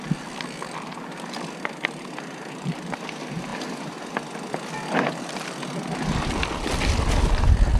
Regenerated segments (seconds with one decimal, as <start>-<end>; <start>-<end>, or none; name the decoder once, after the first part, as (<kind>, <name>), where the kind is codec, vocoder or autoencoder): none